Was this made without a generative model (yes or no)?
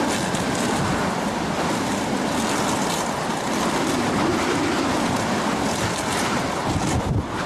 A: yes